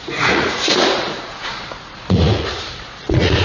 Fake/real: fake